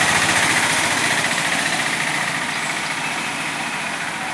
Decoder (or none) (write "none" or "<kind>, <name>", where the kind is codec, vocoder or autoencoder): none